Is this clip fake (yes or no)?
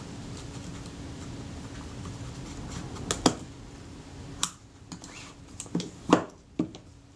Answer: no